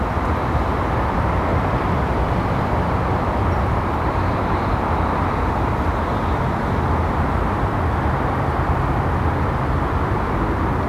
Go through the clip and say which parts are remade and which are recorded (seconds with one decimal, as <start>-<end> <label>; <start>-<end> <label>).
0.0-1.5 recorded; 1.5-2.7 remade; 2.7-10.9 recorded